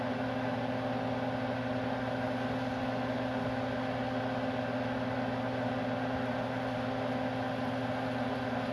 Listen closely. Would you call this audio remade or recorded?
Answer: recorded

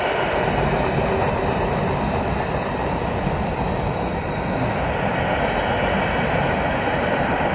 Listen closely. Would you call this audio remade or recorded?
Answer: recorded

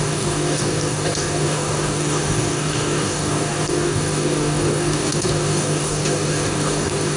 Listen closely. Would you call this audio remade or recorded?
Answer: remade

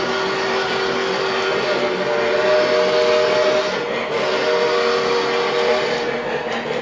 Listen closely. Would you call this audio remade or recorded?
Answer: recorded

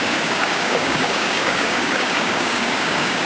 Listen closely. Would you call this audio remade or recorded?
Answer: remade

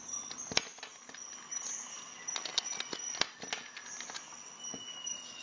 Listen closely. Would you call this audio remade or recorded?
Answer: recorded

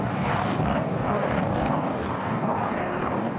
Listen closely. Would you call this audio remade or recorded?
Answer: remade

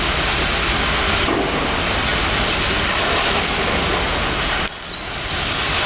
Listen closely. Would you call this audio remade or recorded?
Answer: recorded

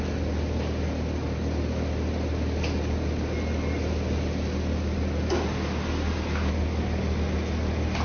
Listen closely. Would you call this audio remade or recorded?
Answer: recorded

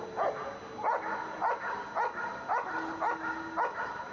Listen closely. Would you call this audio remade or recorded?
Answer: recorded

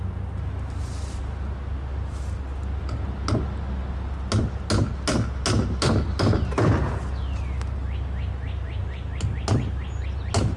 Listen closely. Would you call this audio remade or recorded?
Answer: recorded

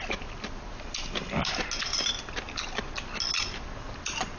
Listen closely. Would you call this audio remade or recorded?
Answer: recorded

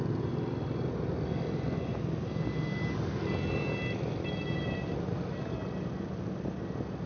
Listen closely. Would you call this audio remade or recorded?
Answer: recorded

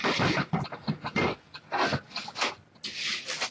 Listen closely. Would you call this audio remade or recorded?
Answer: recorded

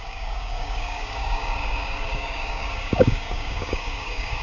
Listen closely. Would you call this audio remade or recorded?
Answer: remade